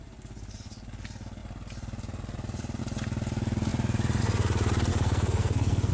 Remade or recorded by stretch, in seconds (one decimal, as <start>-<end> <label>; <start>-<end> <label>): 0.0-4.9 recorded; 4.9-5.9 remade

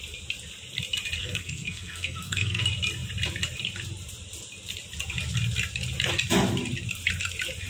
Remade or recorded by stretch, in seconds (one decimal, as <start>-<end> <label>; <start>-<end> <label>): 0.0-1.2 recorded; 1.2-2.6 remade; 2.6-7.7 recorded